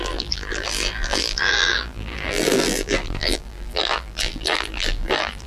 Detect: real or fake fake